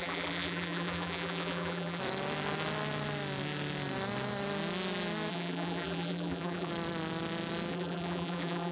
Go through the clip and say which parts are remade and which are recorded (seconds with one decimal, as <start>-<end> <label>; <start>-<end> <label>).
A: 0.0-2.0 remade; 2.0-5.3 recorded; 5.3-6.7 remade; 6.7-7.7 recorded; 7.7-8.7 remade